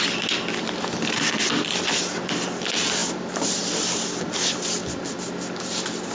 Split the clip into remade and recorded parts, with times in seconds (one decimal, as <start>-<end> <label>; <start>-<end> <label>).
0.0-6.1 recorded